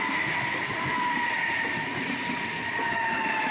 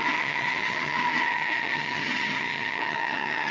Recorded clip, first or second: first